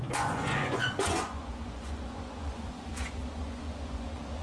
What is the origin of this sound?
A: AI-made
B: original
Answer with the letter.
A